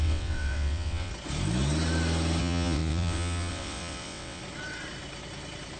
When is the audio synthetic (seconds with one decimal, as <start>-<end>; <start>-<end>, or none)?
0.0-1.1; 2.4-4.4